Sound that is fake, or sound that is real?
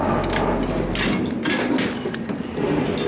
real